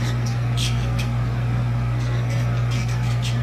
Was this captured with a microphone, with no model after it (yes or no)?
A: no